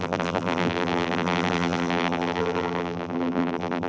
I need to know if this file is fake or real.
fake